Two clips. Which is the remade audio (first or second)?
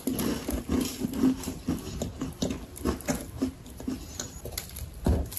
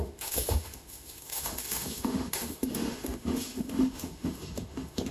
second